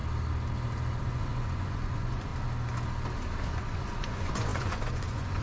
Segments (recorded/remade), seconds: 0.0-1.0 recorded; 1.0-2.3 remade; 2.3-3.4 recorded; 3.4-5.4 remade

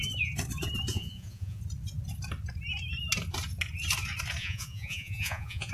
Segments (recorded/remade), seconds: 0.0-0.9 recorded; 0.9-1.6 remade; 1.6-4.4 recorded; 4.4-5.7 remade